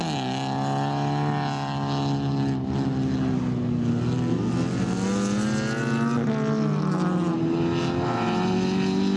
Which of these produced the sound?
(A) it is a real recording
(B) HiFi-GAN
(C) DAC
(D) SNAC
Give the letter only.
A